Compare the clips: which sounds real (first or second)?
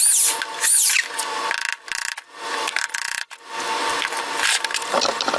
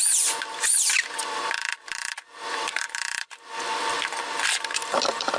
first